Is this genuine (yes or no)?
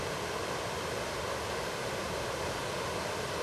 yes